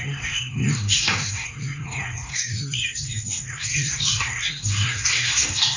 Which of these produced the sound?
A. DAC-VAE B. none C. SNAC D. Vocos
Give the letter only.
C